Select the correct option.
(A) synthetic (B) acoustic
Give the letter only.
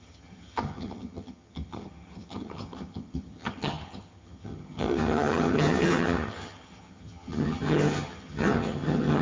A